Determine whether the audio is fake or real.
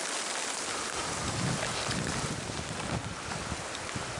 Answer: real